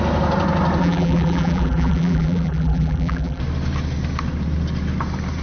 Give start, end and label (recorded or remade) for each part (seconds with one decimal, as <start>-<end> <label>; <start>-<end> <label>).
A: 0.0-0.8 recorded; 0.8-3.4 remade; 3.4-5.4 recorded